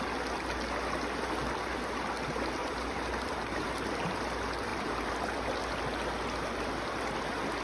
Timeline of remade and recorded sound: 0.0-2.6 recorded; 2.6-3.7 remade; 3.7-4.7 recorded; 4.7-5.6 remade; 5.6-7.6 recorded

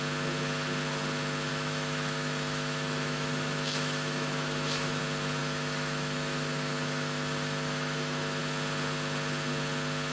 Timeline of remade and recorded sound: 0.0-1.5 recorded; 1.5-5.0 remade; 5.0-5.4 recorded; 5.4-8.4 remade; 8.4-10.1 recorded

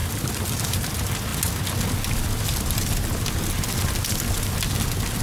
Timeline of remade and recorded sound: 0.0-0.9 remade; 0.9-5.2 recorded

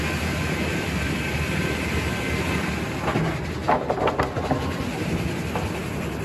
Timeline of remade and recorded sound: 0.0-3.6 recorded; 3.6-4.1 remade; 4.1-6.2 recorded

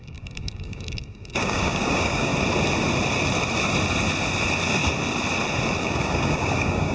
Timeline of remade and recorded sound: 0.0-2.3 remade; 2.3-5.8 recorded; 5.8-6.9 remade

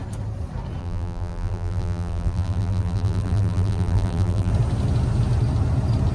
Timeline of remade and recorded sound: 0.0-0.8 recorded; 0.8-4.5 remade; 4.5-6.1 recorded